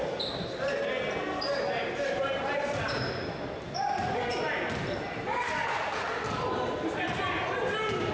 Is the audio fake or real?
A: real